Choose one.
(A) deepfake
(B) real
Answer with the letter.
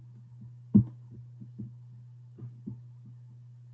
B